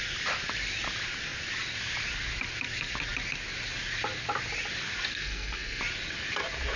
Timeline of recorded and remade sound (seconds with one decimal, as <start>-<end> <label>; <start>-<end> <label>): 0.0-5.1 recorded; 5.1-5.8 remade; 5.8-6.8 recorded